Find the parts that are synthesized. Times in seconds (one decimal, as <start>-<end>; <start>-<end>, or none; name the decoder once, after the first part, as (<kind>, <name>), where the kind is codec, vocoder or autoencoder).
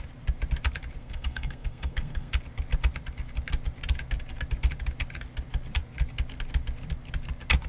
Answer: 1.0-2.3 (codec, SNAC)